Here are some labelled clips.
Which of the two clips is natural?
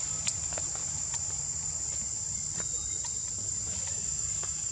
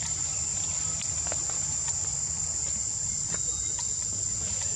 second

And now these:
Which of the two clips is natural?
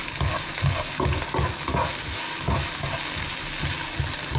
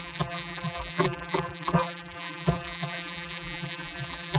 first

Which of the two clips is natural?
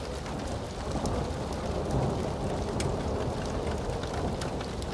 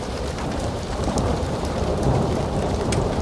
first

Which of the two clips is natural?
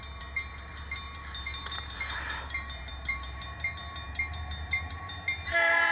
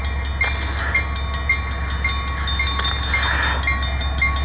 second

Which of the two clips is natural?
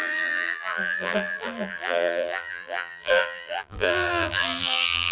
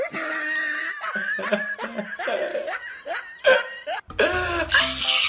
second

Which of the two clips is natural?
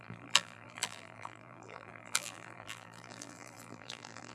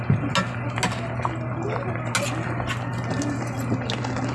second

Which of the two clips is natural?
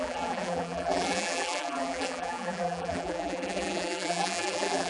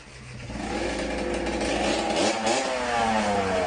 second